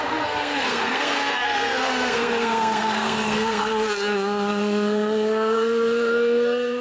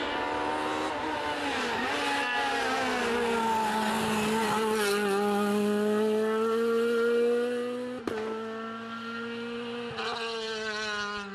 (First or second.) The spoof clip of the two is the first